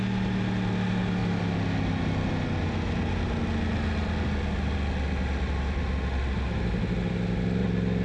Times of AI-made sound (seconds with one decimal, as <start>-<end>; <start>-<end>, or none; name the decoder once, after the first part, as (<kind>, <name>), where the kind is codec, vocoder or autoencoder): none